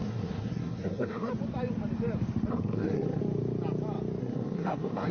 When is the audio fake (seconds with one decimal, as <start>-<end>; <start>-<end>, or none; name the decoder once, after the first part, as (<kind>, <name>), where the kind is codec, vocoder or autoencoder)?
0.0-1.3 (codec, SNAC); 2.5-3.2; 4.2-5.1